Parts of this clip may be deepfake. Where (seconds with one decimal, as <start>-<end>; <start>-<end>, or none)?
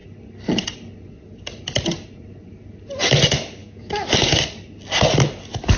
3.6-4.4